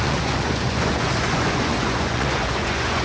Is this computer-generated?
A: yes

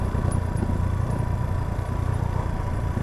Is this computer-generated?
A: no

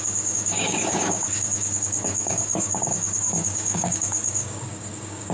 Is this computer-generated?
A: yes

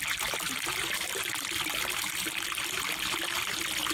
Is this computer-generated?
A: yes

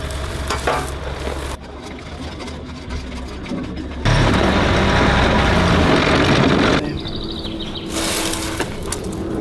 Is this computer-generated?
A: no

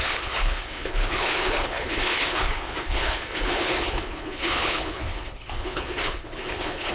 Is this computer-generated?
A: yes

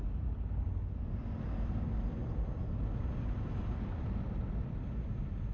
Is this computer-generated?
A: no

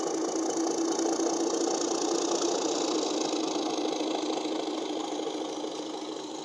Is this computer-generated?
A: no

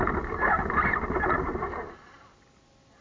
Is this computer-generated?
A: no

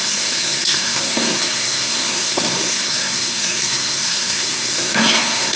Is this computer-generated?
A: yes